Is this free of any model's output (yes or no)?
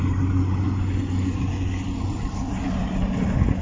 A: yes